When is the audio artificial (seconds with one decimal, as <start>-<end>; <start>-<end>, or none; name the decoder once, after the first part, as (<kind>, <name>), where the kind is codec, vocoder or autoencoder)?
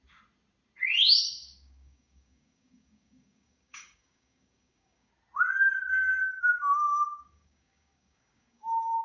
1.0-5.1 (codec, DAC); 6.2-9.0